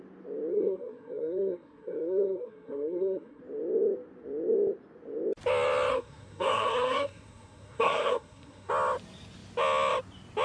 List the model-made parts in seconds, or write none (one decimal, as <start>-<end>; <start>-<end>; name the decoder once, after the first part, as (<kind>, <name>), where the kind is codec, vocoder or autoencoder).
0.5-3.4 (codec, SNAC); 5.9-8.7